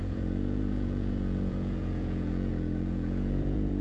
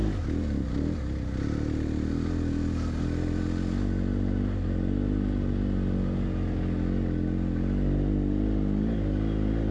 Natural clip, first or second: second